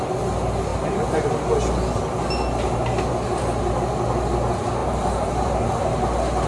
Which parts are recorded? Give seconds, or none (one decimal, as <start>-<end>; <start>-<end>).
0.0-0.7; 1.3-4.8; 5.7-6.5